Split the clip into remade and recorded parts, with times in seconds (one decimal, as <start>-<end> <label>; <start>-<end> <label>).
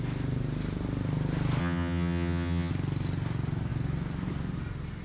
0.0-1.6 recorded; 1.6-2.7 remade; 2.7-5.0 recorded